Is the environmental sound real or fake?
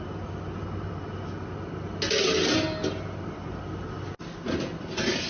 real